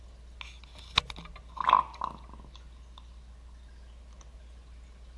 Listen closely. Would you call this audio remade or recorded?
recorded